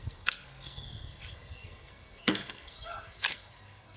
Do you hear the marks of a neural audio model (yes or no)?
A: yes